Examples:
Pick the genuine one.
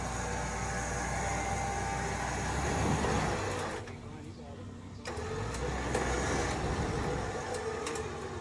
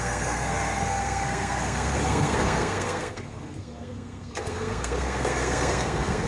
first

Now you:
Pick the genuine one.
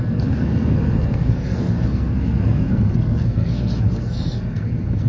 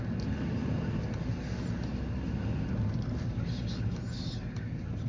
second